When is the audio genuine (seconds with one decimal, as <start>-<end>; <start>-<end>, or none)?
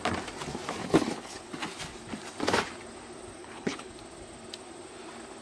0.0-0.8; 1.5-3.4; 3.9-5.4